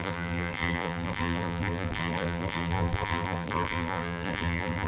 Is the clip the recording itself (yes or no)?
no